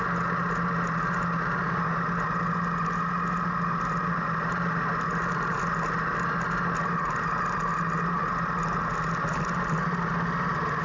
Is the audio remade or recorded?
recorded